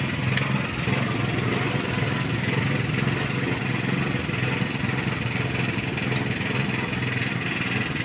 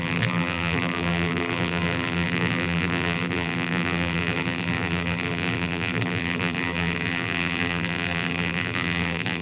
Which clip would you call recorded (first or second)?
first